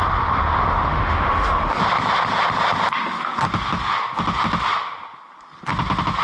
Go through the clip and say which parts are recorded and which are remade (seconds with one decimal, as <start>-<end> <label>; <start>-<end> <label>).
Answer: 0.0-0.9 recorded; 0.9-1.8 remade; 1.8-6.2 recorded